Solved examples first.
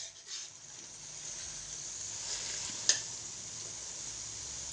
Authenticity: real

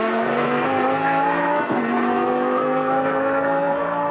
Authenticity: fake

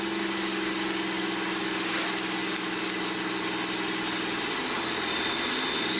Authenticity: real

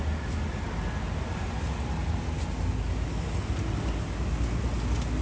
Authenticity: real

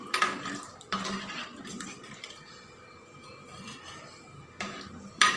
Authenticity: fake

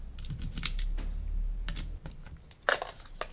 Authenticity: real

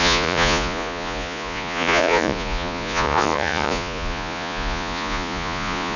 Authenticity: fake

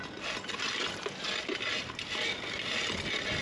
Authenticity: real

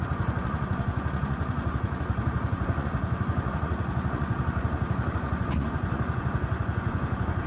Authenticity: fake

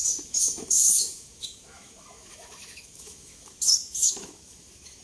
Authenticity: fake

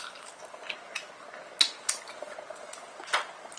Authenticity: real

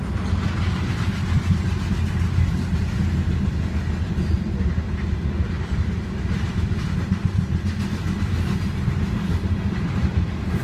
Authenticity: real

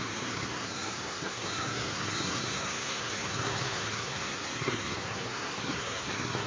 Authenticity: fake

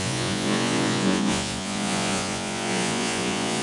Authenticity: fake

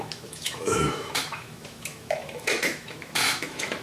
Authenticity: fake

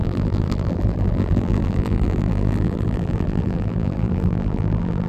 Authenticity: fake